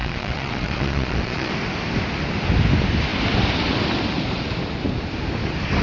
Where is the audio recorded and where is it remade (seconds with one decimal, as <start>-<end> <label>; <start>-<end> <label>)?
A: 0.0-1.5 remade; 1.5-5.8 recorded